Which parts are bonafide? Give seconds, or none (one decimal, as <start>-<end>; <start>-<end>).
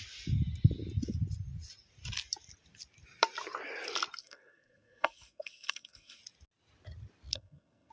0.0-4.2; 6.2-7.3